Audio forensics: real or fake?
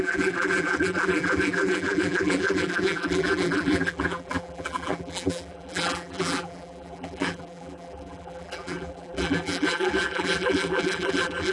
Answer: fake